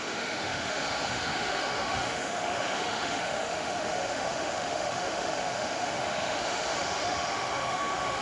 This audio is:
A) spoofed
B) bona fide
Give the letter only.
A